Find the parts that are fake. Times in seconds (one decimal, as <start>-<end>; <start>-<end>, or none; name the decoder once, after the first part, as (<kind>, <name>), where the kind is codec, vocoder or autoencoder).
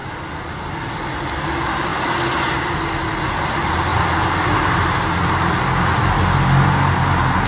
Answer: 3.9-5.6 (vocoder, BigVGAN v2)